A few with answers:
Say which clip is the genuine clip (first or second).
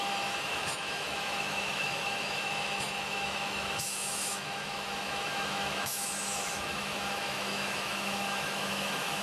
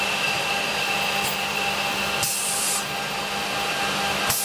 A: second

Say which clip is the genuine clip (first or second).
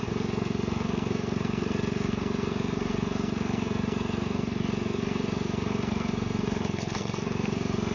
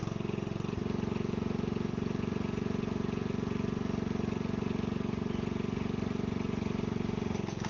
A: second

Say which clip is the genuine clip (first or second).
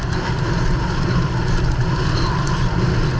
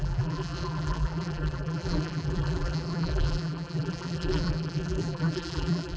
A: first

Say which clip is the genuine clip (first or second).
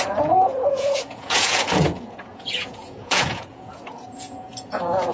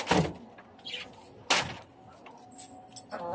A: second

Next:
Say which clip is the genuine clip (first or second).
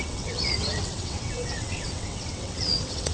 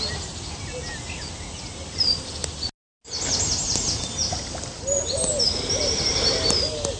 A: second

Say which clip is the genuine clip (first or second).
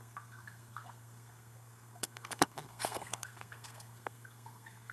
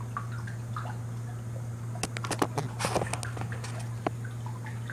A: second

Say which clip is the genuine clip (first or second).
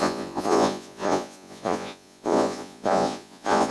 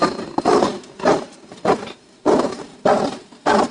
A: second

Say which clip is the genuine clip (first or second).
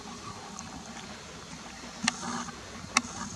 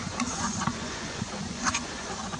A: first